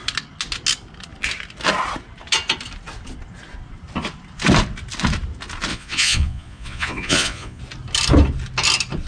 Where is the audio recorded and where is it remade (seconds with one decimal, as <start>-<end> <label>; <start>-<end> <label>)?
0.0-5.7 recorded; 5.7-7.6 remade; 7.6-9.1 recorded